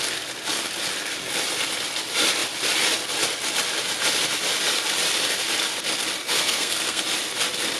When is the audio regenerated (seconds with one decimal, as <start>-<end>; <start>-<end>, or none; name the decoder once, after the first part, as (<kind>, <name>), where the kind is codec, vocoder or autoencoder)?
6.2-7.0 (codec, SNAC)